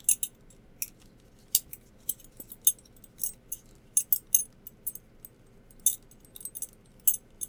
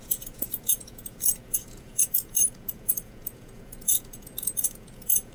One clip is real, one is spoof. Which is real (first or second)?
first